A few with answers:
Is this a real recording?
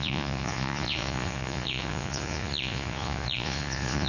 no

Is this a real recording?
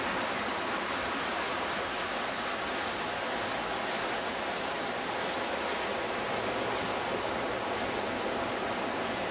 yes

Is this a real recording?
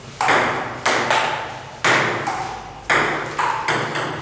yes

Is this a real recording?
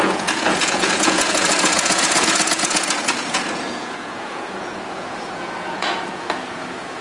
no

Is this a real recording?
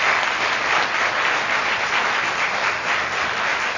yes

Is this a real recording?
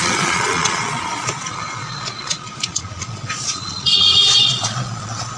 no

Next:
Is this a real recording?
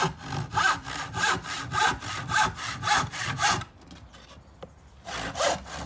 yes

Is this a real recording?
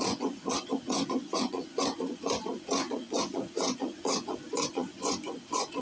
no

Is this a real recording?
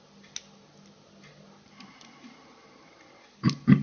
yes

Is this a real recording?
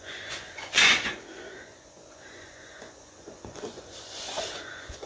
no